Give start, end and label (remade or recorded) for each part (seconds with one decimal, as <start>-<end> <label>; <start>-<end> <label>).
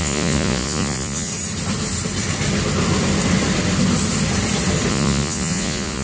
0.0-1.3 remade; 1.3-4.9 recorded; 4.9-6.0 remade